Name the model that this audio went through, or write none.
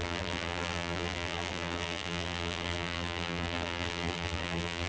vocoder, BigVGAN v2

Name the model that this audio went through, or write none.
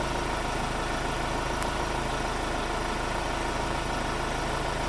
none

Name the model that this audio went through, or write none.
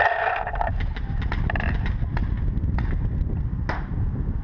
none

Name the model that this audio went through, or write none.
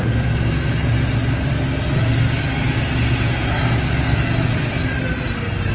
none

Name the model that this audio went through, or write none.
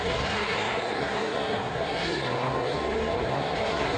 codec, SNAC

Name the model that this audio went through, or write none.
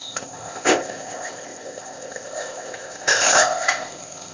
codec, ZipCodec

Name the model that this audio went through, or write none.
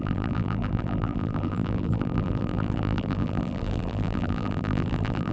vocoder, BigVGAN v2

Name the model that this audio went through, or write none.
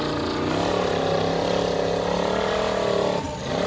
none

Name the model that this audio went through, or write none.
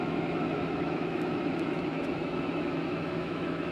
autoencoder, DAC-VAE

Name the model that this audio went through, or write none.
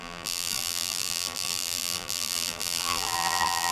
vocoder, BigVGAN v2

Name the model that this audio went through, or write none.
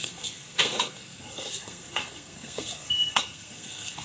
codec, SNAC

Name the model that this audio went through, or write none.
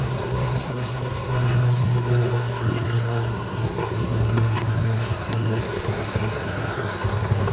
codec, SNAC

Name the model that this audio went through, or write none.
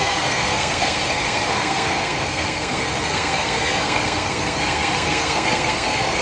codec, SNAC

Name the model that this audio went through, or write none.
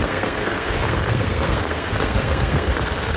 codec, SNAC